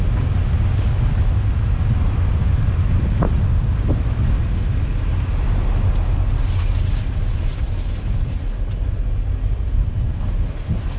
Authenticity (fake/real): real